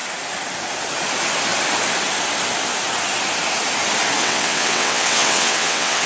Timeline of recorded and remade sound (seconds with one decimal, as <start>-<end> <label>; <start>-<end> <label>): 0.0-4.2 recorded; 4.2-6.1 remade